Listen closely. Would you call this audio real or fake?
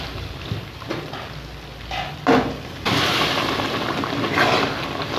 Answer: real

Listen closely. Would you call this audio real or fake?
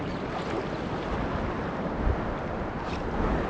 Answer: real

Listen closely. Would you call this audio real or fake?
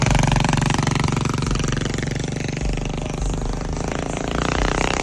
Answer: fake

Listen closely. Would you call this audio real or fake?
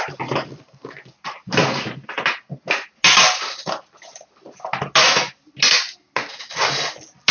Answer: real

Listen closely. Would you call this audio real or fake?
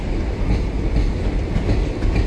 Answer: real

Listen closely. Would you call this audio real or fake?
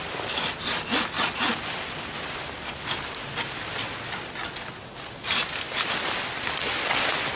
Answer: real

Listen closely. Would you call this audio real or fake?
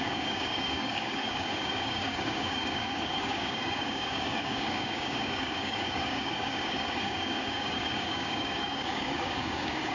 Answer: fake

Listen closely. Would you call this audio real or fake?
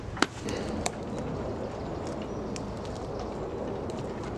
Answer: real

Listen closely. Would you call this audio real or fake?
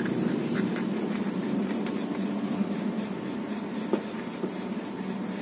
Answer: fake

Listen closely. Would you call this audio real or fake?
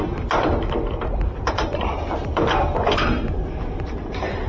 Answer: fake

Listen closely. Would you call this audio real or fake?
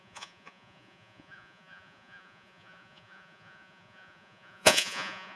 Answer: fake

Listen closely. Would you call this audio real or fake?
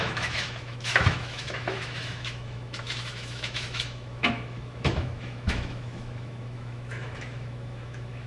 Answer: fake